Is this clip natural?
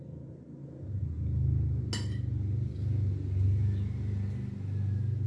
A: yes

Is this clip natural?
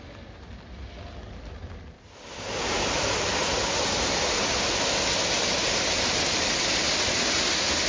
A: yes